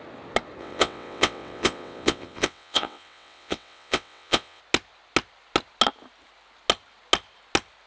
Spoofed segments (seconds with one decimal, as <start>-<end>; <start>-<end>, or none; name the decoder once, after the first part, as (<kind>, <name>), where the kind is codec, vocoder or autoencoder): 0.6-4.6 (vocoder, WaveNeXt)